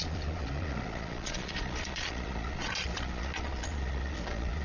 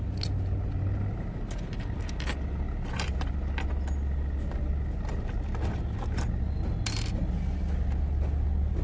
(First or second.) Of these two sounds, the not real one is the first